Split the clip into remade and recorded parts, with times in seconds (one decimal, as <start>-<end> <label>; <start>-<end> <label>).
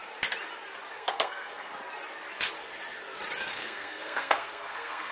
0.0-0.9 recorded; 0.9-1.7 remade; 1.7-3.5 recorded; 3.5-5.1 remade